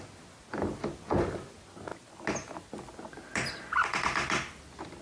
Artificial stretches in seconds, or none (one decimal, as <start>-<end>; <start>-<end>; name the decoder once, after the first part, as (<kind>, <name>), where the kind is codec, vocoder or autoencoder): none